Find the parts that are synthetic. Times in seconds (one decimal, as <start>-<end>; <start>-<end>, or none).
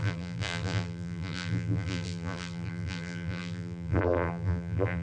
0.0-5.0